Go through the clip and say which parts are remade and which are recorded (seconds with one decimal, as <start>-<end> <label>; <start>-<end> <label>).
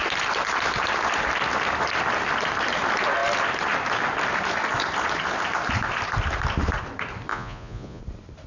0.0-7.3 recorded; 7.3-8.0 remade; 8.0-8.5 recorded